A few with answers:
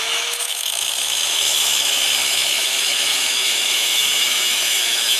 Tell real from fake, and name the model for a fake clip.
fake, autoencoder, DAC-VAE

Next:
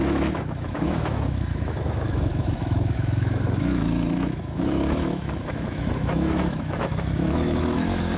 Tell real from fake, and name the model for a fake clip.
fake, autoencoder, DAC-VAE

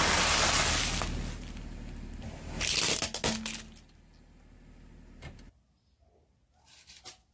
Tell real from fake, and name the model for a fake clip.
real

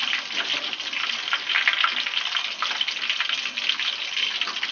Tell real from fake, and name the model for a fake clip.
real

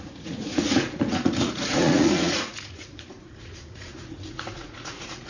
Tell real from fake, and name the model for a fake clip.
fake, vocoder, Vocos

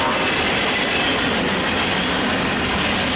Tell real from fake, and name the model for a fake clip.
real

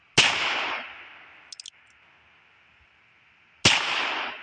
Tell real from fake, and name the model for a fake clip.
real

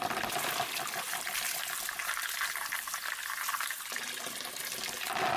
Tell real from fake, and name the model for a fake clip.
real